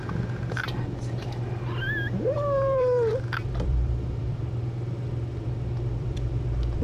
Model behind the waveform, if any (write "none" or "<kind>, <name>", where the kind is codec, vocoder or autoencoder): vocoder, BigVGAN v2